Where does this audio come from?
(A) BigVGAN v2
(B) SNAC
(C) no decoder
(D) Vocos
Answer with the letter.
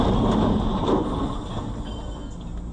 C